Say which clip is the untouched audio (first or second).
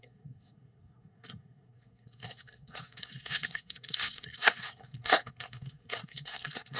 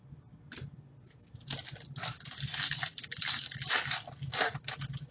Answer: second